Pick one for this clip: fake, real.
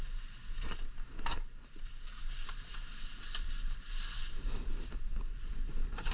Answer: real